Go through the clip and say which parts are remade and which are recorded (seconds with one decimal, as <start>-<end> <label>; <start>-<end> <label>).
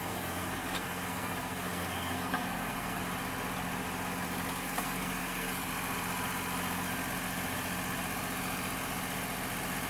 0.0-3.0 remade; 3.0-4.5 recorded; 4.5-5.7 remade; 5.7-9.9 recorded